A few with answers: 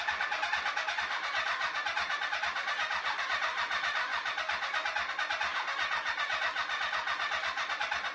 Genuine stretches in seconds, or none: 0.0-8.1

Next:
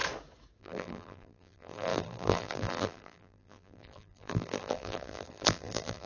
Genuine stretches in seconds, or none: 0.0-0.6

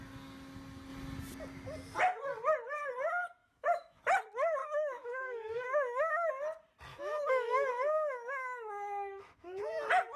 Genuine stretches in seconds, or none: 0.0-3.4; 4.0-4.6; 6.3-6.9; 9.6-10.2

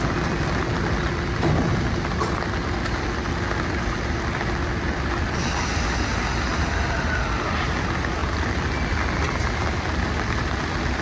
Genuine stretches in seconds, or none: 0.0-11.0